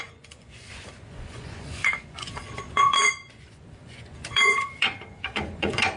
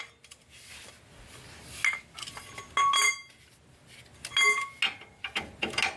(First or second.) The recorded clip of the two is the second